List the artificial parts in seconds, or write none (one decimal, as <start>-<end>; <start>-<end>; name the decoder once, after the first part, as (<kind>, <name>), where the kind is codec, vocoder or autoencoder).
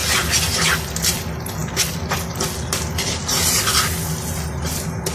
none